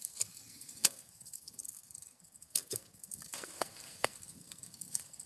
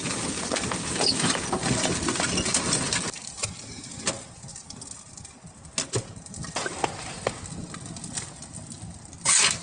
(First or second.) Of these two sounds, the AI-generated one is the first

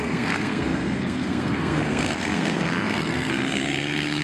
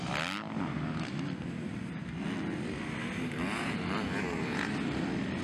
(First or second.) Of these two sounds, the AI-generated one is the first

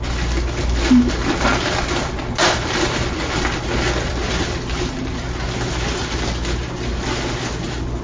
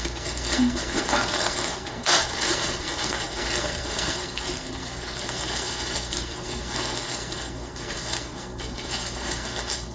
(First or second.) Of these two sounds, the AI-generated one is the second